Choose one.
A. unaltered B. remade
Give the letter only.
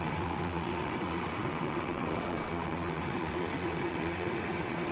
B